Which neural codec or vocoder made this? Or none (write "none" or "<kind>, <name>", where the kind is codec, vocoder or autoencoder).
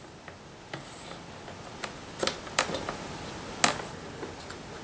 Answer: none